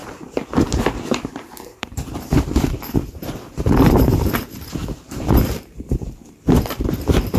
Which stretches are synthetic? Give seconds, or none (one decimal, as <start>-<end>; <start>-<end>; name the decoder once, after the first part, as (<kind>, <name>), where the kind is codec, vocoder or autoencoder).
0.0-4.3 (vocoder, BigVGAN v2); 4.8-7.4